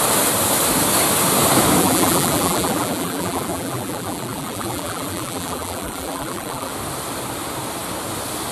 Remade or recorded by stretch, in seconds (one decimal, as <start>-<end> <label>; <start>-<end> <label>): 0.0-1.8 recorded; 1.8-6.7 remade; 6.7-8.5 recorded